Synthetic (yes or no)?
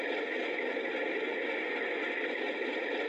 no